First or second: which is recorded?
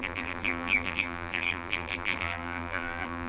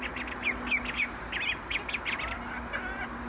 second